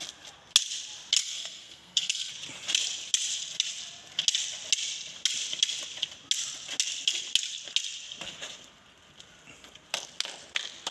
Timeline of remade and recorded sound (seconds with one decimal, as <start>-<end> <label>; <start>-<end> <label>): 0.0-1.2 recorded; 1.2-2.3 remade; 2.3-10.9 recorded